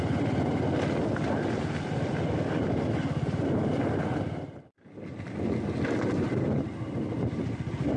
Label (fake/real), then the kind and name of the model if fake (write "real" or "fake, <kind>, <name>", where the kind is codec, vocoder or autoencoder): real